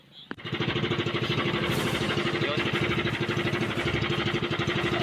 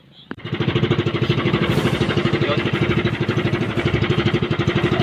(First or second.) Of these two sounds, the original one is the first